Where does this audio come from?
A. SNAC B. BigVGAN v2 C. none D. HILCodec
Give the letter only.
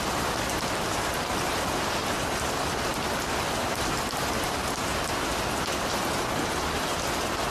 C